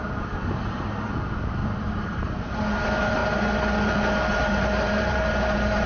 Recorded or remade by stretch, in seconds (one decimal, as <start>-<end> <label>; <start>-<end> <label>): 0.0-1.6 recorded; 1.6-2.2 remade; 2.2-4.4 recorded; 4.4-5.9 remade